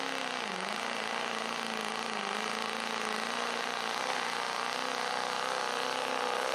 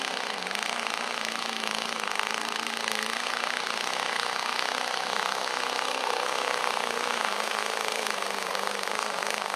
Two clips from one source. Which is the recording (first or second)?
first